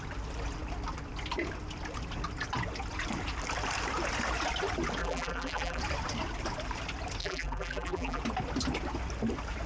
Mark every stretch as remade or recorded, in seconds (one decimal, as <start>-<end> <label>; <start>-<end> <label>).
0.0-5.0 recorded; 5.0-5.8 remade; 5.8-7.2 recorded; 7.2-8.2 remade; 8.2-9.7 recorded

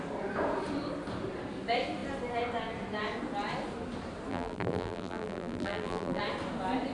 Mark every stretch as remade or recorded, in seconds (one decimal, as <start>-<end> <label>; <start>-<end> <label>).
0.0-4.3 recorded; 4.3-6.2 remade; 6.2-6.9 recorded

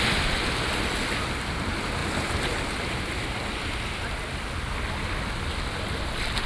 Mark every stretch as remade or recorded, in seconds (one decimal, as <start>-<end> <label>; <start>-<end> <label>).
0.0-6.5 recorded

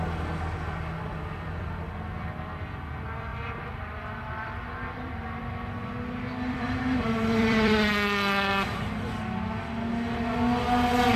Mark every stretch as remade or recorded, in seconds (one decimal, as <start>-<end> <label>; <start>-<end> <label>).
0.0-3.3 recorded; 3.3-7.9 remade; 7.9-11.2 recorded

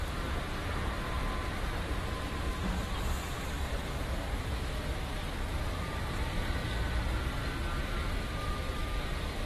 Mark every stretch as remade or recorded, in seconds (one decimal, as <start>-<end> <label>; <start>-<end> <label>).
0.0-6.6 remade; 6.6-7.8 recorded; 7.8-9.5 remade